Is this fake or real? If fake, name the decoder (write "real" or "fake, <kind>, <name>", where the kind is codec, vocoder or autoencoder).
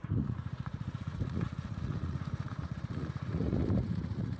fake, vocoder, Vocos